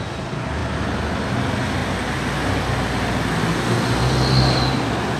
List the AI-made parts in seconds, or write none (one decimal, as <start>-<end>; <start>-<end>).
none